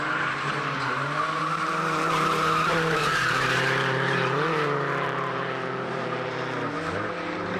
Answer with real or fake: fake